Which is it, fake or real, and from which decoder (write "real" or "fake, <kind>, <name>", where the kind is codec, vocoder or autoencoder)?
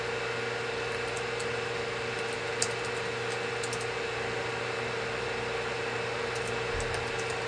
real